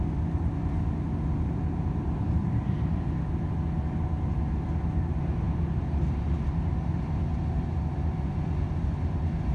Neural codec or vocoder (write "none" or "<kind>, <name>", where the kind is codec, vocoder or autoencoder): none